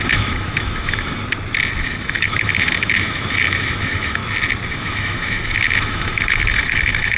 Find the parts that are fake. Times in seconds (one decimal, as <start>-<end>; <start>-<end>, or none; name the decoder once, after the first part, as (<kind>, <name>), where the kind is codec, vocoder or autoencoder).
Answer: 0.0-1.2 (autoencoder, DAC-VAE); 1.8-4.2; 4.7-7.2